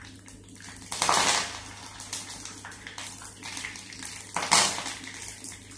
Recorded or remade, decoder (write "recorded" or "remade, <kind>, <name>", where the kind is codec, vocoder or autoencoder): recorded